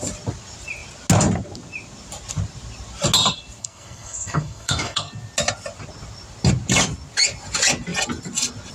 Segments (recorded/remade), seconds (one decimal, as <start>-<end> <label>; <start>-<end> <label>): 0.0-3.6 recorded; 3.6-5.1 remade; 5.1-8.7 recorded